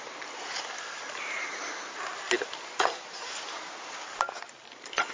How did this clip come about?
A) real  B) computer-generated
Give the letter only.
A